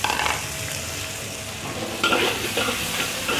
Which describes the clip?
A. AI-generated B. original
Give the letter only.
B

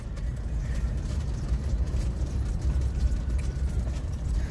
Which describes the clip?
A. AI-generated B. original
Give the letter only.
A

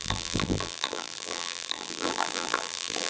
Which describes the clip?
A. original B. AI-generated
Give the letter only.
B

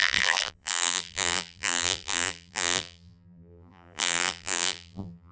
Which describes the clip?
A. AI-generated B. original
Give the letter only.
A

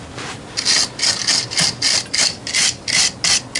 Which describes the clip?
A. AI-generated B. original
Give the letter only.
B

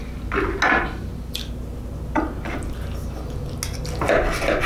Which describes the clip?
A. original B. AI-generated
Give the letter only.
A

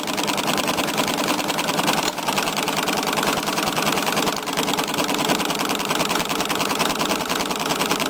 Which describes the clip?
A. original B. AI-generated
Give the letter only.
B